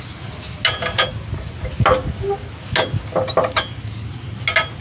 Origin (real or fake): real